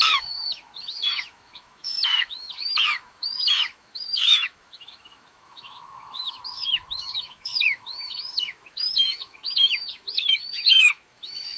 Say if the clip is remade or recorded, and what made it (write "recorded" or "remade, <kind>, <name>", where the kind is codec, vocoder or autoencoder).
remade, autoencoder, DAC-VAE